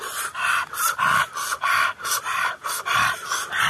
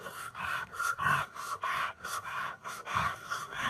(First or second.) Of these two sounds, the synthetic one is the second